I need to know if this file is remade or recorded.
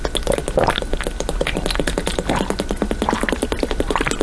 recorded